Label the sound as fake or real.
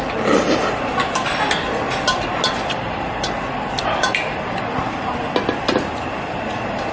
real